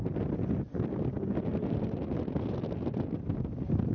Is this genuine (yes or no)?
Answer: yes